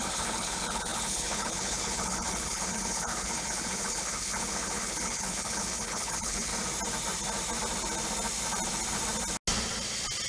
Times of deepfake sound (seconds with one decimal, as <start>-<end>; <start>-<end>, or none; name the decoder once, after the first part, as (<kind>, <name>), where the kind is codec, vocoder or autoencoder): 0.0-6.5 (codec, HILCodec)